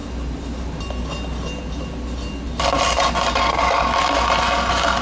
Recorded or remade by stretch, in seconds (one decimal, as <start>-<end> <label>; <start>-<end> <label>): 0.0-5.0 recorded

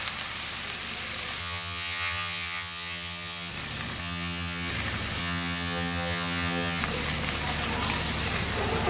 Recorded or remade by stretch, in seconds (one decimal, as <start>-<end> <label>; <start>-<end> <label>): 0.0-1.4 recorded; 1.4-3.5 remade; 3.5-4.0 recorded; 4.0-4.7 remade; 4.7-5.2 recorded; 5.2-6.8 remade; 6.8-8.9 recorded